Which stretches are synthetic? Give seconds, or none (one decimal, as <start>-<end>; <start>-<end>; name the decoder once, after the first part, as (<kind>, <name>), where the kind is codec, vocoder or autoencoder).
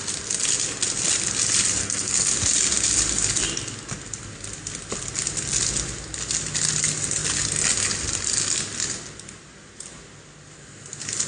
1.8-2.3 (codec, SNAC)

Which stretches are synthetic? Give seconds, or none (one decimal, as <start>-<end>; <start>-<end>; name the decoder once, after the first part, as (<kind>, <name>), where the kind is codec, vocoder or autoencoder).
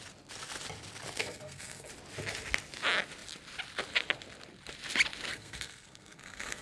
1.2-1.9 (codec, SNAC); 5.3-6.6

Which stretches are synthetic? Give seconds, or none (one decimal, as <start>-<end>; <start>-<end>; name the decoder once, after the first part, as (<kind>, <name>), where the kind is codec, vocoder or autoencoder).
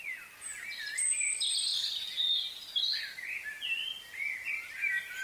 none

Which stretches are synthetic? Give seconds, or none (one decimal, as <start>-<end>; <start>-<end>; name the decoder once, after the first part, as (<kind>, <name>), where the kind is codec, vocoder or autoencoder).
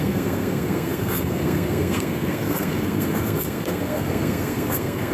0.0-5.1 (codec, SNAC)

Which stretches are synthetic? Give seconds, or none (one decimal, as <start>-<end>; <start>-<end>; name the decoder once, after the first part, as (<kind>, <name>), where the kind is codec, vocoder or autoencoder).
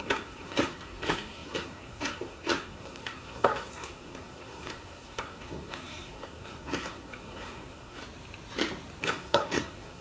0.0-8.0 (codec, SNAC); 9.0-10.0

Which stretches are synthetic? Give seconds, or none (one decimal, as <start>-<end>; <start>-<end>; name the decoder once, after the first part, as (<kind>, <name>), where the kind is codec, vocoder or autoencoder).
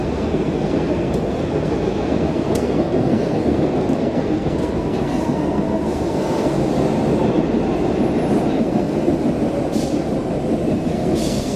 0.0-6.7 (codec, SNAC); 8.6-9.1; 10.7-11.6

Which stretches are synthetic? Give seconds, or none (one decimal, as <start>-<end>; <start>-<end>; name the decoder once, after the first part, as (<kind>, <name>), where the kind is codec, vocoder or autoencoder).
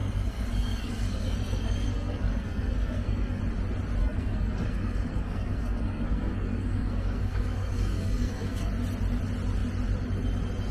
0.0-3.4 (codec, SNAC); 4.0-8.7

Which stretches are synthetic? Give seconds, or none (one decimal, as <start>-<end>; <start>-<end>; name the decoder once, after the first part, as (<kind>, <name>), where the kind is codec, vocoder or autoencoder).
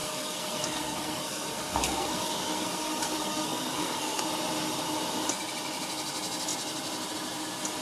0.0-4.2 (codec, SNAC)